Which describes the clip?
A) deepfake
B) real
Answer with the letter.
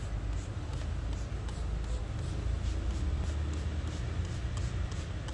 B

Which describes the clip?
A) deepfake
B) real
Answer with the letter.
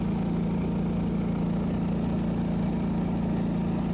B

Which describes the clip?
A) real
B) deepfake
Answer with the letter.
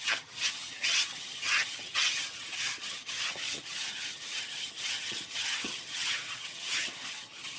B